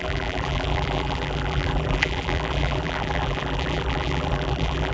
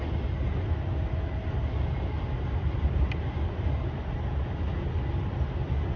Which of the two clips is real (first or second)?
second